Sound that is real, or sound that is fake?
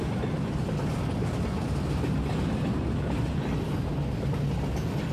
real